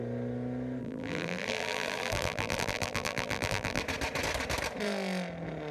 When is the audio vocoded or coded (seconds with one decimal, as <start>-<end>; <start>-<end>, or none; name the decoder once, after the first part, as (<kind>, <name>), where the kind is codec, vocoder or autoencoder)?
0.8-3.8 (vocoder, BigVGAN v2)